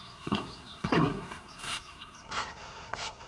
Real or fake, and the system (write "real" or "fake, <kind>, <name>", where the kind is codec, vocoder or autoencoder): fake, codec, SNAC